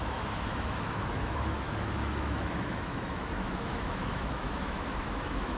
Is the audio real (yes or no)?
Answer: no